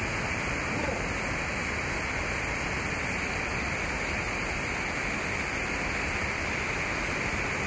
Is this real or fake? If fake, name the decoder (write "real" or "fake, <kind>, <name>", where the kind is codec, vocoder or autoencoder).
real